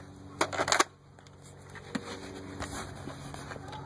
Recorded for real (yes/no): yes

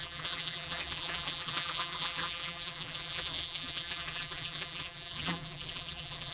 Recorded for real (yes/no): no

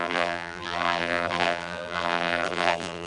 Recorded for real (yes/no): no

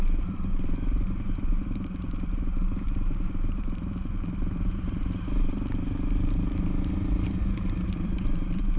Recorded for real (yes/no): no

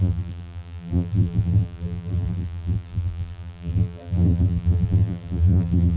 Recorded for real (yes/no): no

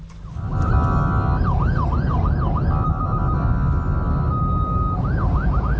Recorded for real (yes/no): yes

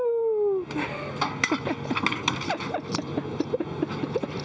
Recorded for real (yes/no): yes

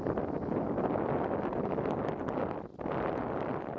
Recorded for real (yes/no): yes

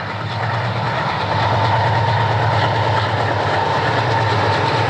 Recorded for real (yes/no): no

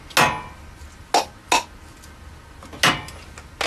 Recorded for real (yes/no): yes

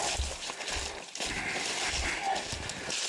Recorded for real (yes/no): yes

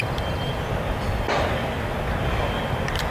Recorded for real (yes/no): yes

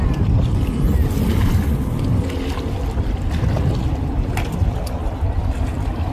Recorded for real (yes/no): yes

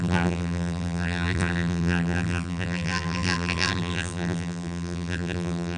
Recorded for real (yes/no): no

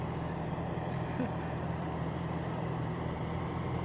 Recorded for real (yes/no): no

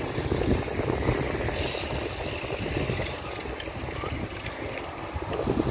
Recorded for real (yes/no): yes